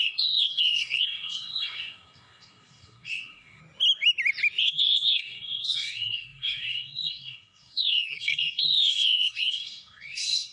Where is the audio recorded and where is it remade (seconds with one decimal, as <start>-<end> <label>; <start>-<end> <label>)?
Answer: 0.0-3.6 remade; 3.6-4.6 recorded; 4.6-10.5 remade

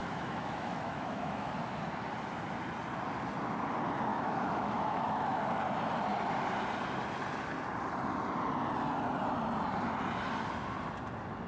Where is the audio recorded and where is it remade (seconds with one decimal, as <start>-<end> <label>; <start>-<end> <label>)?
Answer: 0.0-1.5 remade; 1.5-4.1 recorded; 4.1-5.4 remade; 5.4-11.5 recorded